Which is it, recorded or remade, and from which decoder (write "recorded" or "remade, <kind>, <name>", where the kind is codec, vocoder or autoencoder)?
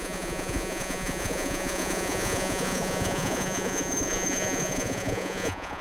remade, vocoder, Vocos